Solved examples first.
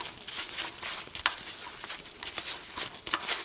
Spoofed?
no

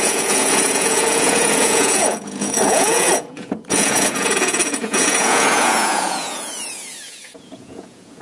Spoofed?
yes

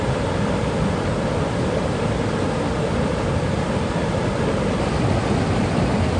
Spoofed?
no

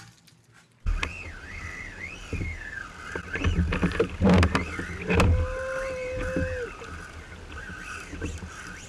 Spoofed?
no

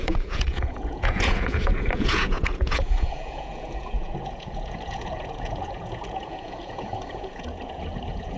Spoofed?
yes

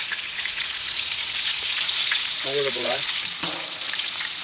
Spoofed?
yes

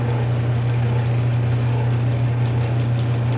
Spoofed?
no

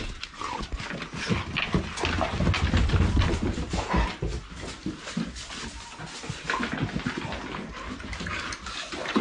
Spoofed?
no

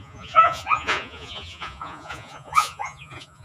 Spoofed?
yes